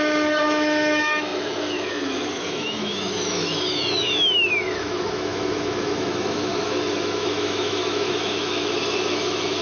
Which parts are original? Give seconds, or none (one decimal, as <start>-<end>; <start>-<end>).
none